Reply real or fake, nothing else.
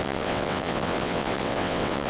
fake